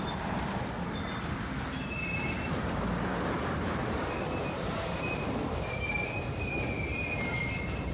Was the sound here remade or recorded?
recorded